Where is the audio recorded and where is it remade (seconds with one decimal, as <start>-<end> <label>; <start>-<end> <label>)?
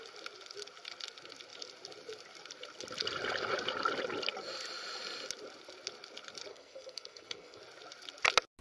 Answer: 0.0-6.5 recorded; 6.5-7.6 remade; 7.6-8.6 recorded